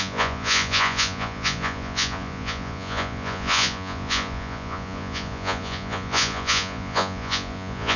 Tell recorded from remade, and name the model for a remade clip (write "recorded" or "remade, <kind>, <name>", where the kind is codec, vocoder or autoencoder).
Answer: remade, vocoder, Vocos